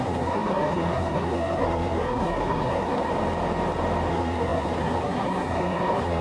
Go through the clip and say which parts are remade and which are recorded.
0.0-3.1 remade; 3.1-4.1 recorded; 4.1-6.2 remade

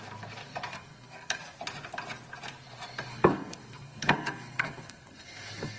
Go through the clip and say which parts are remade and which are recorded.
0.0-0.7 recorded; 0.7-1.6 remade; 1.6-3.1 recorded; 3.1-5.8 remade

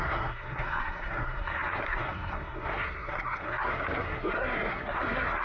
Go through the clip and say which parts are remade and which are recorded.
0.0-5.4 remade

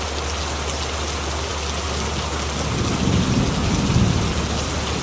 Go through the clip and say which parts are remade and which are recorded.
0.0-5.0 recorded

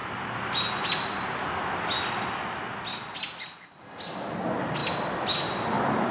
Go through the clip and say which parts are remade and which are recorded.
0.0-6.1 recorded

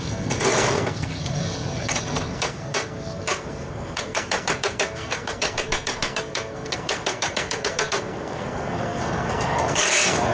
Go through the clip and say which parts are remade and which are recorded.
0.0-10.3 remade